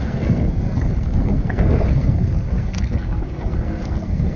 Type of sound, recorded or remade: remade